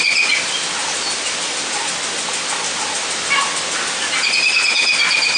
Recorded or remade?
recorded